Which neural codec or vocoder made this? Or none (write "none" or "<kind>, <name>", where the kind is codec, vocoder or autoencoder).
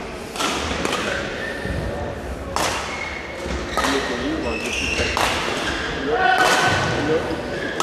none